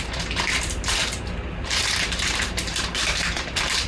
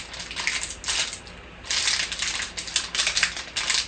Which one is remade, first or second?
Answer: first